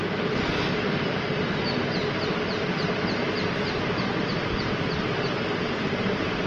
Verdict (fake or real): real